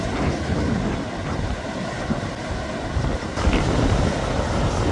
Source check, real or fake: real